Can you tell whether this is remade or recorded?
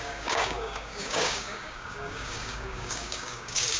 remade